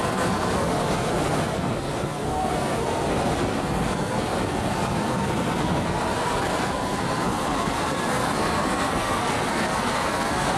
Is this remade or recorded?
remade